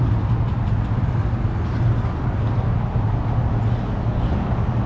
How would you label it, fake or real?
real